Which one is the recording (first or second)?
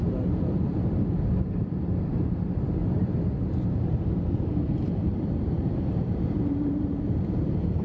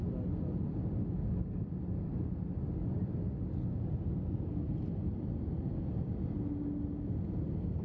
second